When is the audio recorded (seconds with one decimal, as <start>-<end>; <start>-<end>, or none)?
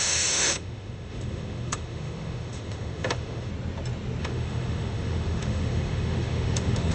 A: 3.5-4.2